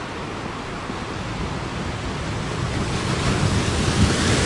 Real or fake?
real